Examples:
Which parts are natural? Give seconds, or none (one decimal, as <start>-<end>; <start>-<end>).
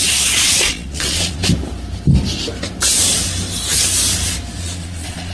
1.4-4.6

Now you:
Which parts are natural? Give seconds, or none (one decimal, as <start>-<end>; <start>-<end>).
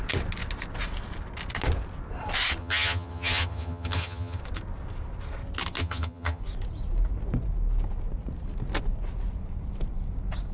0.0-2.6; 4.4-5.8; 6.4-10.5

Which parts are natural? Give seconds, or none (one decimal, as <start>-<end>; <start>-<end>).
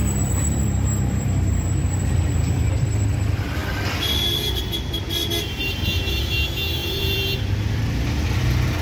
2.7-6.8; 7.4-8.8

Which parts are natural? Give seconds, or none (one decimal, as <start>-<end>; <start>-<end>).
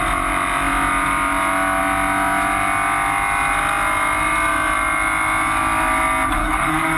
0.0-6.4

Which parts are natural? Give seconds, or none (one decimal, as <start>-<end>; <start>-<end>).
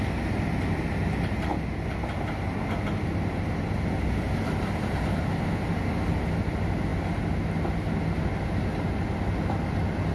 0.0-10.1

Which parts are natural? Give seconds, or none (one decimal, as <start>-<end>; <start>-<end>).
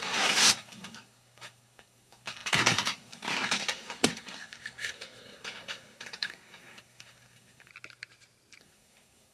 7.7-8.6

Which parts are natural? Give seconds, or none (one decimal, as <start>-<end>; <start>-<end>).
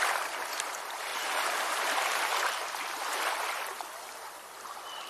0.0-1.1; 2.9-5.1